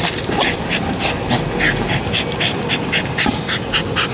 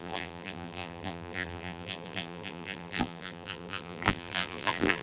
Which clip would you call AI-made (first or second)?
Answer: second